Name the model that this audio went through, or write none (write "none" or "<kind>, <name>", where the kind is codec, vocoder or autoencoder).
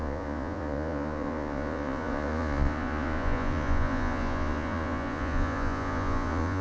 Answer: vocoder, Vocos